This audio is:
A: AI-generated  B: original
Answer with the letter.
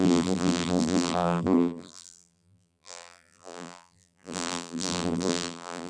A